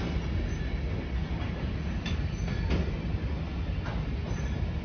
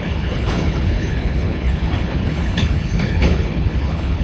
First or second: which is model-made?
second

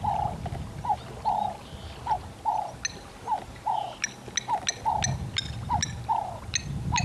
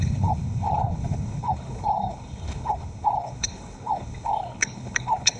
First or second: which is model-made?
second